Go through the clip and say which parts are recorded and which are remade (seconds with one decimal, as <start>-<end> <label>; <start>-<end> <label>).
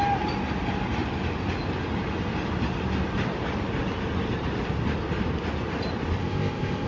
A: 0.0-6.2 recorded; 6.2-6.9 remade